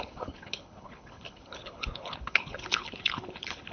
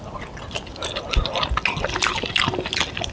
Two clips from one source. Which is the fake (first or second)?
first